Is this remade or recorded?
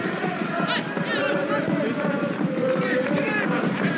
recorded